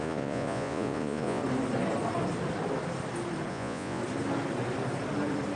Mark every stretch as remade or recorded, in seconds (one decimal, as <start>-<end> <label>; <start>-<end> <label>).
0.0-1.4 remade; 1.4-3.5 recorded; 3.5-4.0 remade; 4.0-5.6 recorded